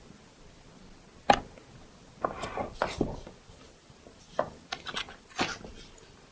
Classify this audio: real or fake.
real